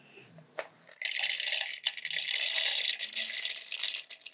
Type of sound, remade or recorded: recorded